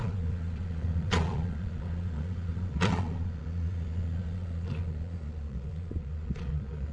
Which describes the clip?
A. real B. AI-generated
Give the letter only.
B